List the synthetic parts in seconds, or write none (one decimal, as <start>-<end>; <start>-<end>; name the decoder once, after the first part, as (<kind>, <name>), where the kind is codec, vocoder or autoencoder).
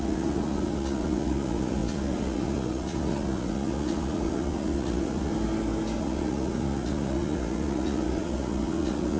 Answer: 0.0-5.3 (vocoder, Vocos); 6.0-9.2